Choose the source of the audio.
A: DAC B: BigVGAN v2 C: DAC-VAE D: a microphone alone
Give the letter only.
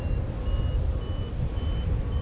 D